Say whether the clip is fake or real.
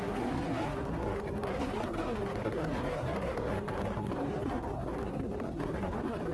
fake